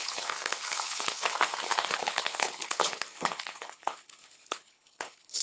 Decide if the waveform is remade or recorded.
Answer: remade